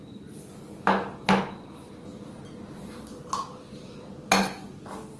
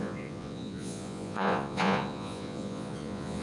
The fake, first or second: second